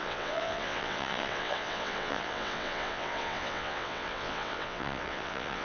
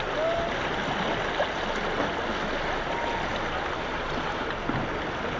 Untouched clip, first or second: second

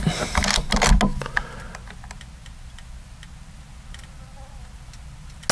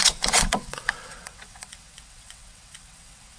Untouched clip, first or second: first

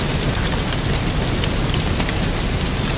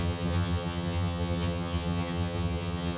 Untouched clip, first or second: first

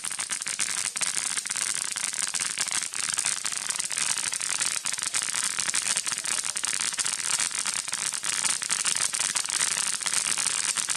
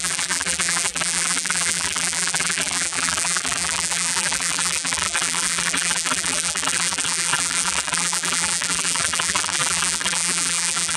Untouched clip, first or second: first